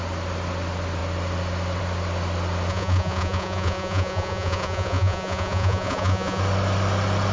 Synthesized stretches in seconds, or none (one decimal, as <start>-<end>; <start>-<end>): 2.7-6.4